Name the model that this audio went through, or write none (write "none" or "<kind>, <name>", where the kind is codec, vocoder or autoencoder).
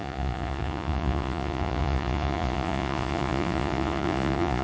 vocoder, Vocos